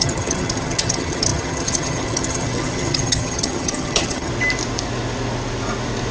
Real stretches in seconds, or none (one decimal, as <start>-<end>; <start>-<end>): 4.3-6.1